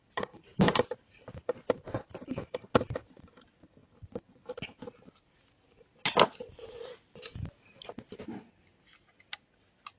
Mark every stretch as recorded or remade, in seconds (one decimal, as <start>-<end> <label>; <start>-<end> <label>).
0.0-0.5 recorded; 0.5-2.4 remade; 2.4-10.0 recorded